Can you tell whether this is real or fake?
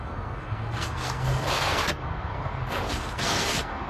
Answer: fake